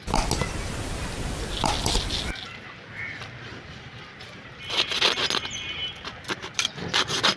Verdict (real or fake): real